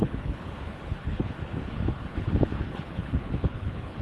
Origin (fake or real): fake